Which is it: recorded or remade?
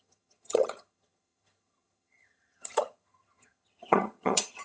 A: remade